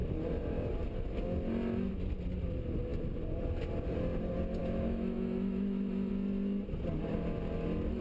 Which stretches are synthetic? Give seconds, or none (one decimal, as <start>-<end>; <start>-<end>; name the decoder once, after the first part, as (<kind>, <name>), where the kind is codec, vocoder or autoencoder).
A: 4.6-6.1 (autoencoder, DAC-VAE)